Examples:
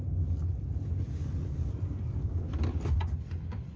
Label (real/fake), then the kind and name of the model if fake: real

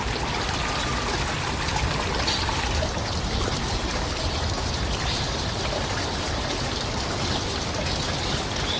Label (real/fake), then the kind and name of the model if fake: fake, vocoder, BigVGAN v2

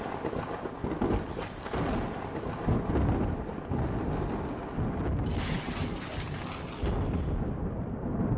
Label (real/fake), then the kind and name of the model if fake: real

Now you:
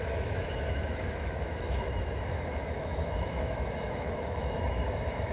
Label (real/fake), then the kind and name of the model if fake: fake, autoencoder, DAC-VAE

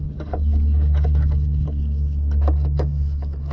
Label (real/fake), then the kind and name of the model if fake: fake, codec, DAC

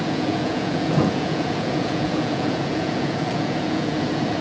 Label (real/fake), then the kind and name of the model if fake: fake, vocoder, Vocos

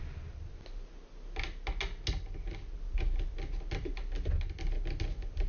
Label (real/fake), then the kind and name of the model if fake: real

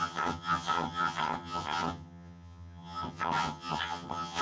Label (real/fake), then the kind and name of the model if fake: fake, vocoder, HiFi-GAN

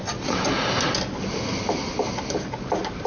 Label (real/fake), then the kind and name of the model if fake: real